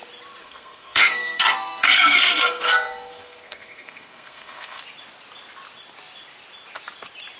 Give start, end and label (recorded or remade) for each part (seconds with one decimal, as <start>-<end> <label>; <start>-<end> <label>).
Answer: 0.0-0.4 recorded; 0.4-4.8 remade; 4.8-7.4 recorded